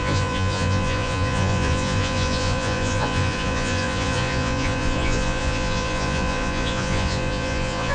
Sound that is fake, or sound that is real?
fake